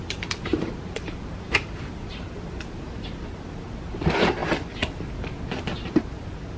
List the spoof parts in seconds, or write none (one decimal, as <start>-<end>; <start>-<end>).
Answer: 0.5-3.1